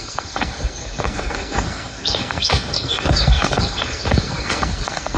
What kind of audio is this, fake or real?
fake